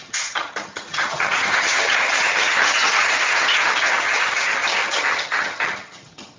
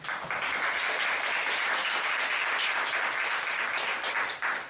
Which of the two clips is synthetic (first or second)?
first